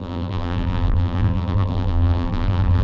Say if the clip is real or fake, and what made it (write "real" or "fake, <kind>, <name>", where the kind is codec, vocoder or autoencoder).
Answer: fake, vocoder, BigVGAN v2